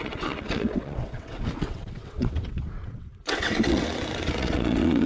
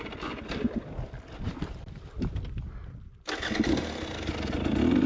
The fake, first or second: first